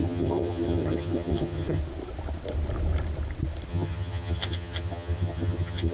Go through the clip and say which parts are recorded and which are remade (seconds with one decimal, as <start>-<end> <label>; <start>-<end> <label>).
0.0-1.8 remade; 1.8-3.7 recorded; 3.7-5.9 remade